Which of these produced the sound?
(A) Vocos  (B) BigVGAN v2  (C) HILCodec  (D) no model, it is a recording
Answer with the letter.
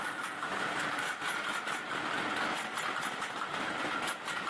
D